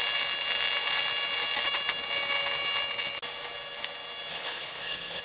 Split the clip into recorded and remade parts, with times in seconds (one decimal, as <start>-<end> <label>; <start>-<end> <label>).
0.0-4.3 recorded; 4.3-5.2 remade